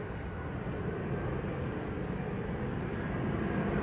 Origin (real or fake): real